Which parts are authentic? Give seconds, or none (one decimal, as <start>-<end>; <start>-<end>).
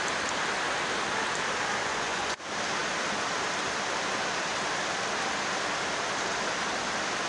0.0-1.8; 2.4-7.3